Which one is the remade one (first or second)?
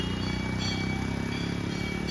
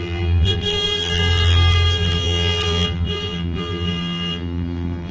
second